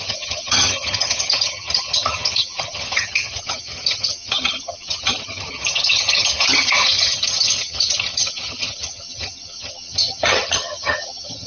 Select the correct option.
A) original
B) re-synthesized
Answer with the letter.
B